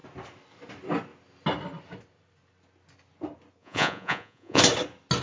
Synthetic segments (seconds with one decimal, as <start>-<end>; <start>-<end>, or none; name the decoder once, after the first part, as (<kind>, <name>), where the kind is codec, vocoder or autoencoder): 3.6-4.6 (vocoder, Vocos)